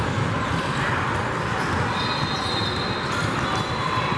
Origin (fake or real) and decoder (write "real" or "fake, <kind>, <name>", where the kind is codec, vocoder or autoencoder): real